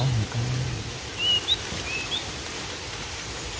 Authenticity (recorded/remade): recorded